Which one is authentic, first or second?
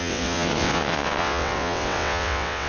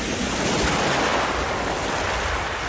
second